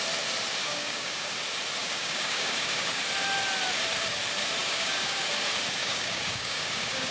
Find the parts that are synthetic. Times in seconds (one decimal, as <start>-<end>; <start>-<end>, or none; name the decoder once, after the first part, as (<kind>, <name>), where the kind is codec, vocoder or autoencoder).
0.6-1.3 (codec, DAC); 1.8-3.0; 4.6-5.3; 5.8-7.1

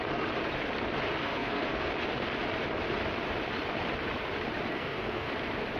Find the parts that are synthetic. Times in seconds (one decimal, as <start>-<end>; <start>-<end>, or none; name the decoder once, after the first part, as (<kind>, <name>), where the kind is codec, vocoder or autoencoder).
1.2-1.9 (codec, SNAC); 4.7-5.3

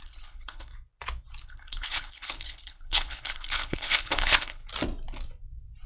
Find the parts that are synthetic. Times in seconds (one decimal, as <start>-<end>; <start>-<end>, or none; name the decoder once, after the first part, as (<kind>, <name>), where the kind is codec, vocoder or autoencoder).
0.0-0.7 (codec, HILCodec); 1.4-4.6